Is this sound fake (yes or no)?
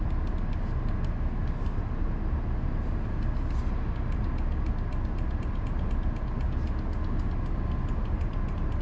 no